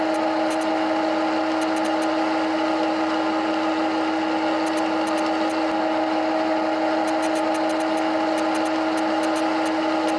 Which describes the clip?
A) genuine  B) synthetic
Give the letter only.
A